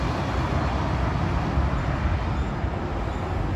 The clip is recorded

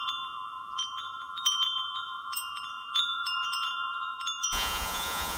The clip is remade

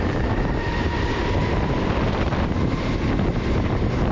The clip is recorded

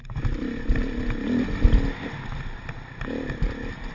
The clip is recorded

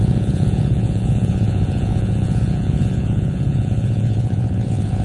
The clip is remade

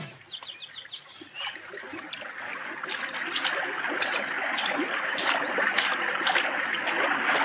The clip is recorded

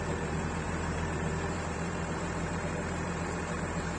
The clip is remade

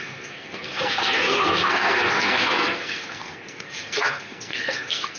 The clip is remade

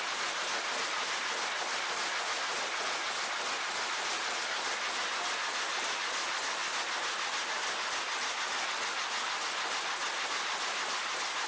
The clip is recorded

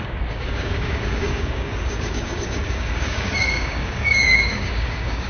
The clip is remade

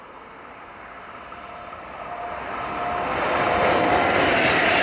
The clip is recorded